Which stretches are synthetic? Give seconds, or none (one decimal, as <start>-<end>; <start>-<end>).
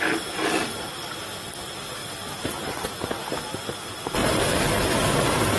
2.0-2.8; 4.2-4.8